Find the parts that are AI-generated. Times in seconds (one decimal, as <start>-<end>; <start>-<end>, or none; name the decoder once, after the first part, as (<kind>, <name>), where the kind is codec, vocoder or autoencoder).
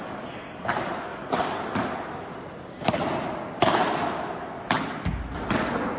none